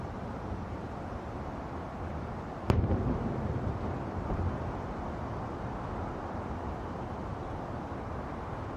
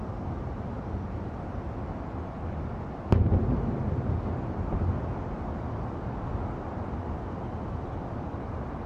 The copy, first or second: first